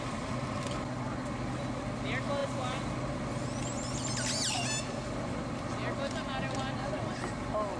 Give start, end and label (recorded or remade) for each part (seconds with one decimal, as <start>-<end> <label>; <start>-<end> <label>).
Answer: 0.0-7.8 recorded